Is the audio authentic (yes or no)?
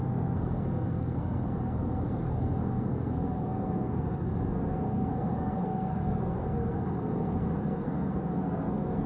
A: no